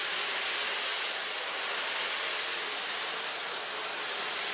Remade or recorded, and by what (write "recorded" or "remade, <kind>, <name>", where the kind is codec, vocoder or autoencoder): recorded